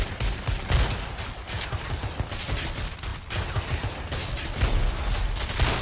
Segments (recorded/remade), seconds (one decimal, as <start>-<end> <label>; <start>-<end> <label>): 0.0-5.8 recorded